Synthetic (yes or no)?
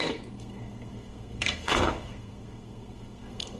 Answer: yes